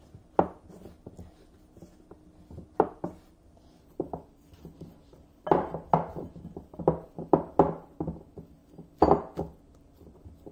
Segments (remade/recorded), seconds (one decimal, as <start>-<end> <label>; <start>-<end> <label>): 0.0-10.5 recorded